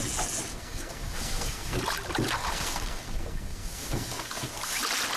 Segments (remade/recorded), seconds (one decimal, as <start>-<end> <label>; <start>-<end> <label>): 0.0-0.5 recorded; 0.5-1.8 remade; 1.8-2.4 recorded; 2.4-4.6 remade; 4.6-5.2 recorded